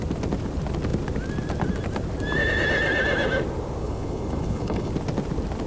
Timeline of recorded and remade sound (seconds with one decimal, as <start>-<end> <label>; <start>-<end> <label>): 0.0-3.8 recorded; 3.8-4.9 remade; 4.9-5.7 recorded